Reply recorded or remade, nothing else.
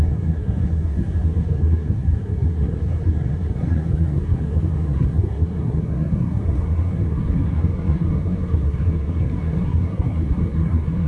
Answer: remade